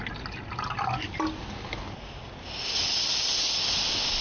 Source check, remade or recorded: recorded